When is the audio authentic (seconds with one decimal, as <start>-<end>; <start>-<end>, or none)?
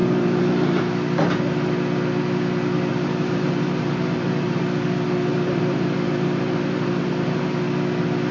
0.9-2.9; 4.6-5.3; 7.6-8.3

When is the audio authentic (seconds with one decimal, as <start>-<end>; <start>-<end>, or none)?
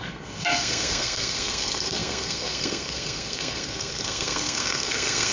none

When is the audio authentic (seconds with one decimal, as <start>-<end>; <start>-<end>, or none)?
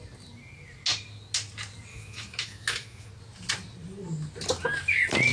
0.0-1.9; 3.1-5.3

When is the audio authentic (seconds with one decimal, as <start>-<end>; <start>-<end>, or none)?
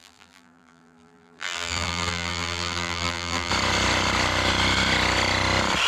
3.5-5.9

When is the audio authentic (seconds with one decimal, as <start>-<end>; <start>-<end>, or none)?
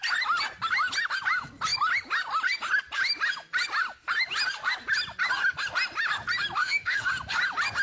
0.0-6.6; 7.1-7.8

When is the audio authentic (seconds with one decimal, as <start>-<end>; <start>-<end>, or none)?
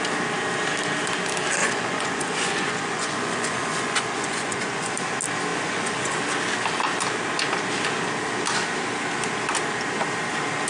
0.0-1.6; 4.9-5.5; 6.2-10.7